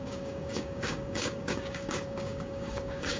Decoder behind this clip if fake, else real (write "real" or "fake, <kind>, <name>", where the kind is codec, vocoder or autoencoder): fake, codec, DAC